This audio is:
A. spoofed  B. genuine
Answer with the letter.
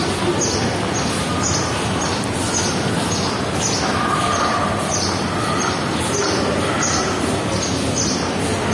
B